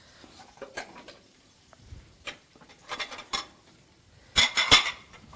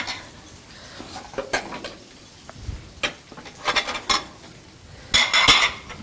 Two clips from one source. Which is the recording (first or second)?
second